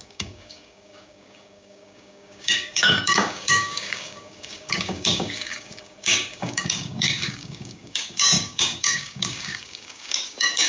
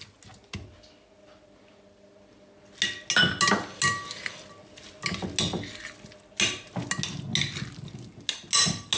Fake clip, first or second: first